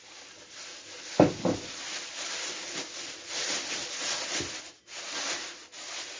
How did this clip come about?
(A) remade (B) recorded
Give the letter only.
B